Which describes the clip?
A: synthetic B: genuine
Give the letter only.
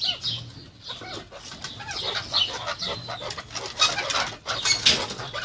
B